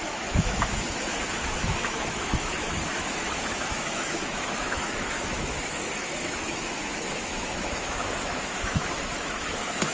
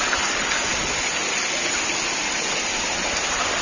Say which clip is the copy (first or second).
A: first